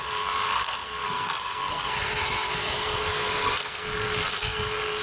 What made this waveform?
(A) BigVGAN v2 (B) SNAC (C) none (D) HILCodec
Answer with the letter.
B